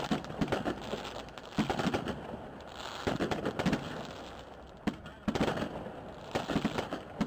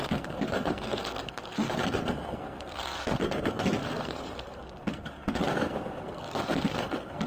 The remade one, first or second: second